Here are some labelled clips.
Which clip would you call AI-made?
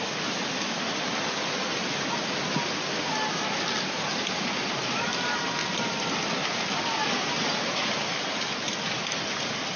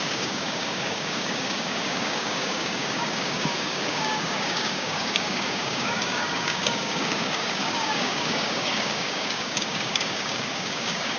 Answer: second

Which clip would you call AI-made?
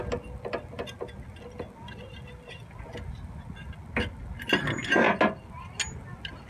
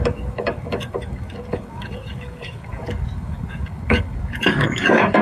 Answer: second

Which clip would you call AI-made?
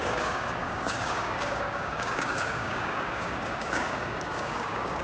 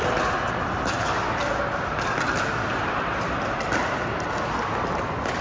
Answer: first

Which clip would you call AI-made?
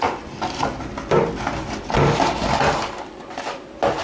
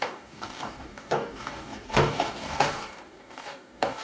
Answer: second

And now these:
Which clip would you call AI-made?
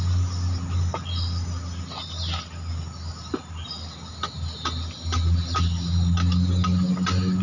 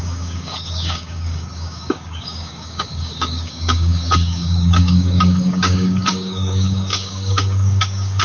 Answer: second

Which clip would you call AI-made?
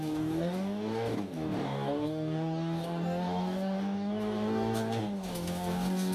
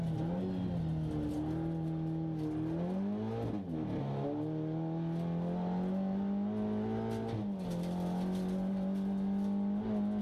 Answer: first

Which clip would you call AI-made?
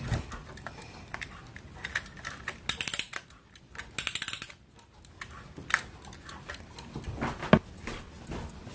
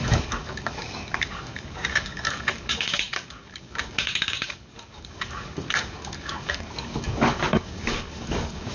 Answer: second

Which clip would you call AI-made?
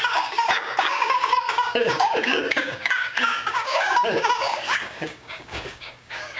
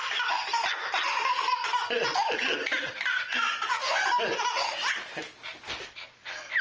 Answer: first